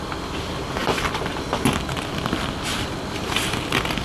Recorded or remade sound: recorded